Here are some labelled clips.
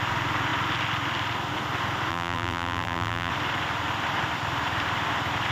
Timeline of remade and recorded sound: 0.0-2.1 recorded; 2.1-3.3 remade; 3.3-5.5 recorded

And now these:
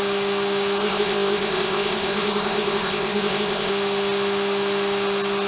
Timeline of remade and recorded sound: 0.0-0.8 recorded; 0.8-3.7 remade; 3.7-5.5 recorded

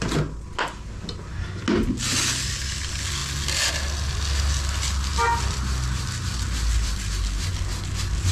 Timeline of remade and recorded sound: 0.0-5.1 recorded; 5.1-7.1 remade; 7.1-8.3 recorded

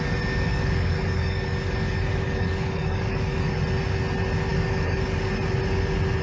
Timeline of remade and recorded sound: 0.0-0.5 recorded; 0.5-3.6 remade; 3.6-4.5 recorded; 4.5-5.3 remade; 5.3-6.2 recorded

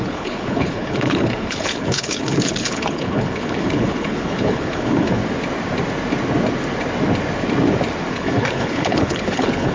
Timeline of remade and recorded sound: 0.0-5.2 remade; 5.2-8.1 recorded; 8.1-9.7 remade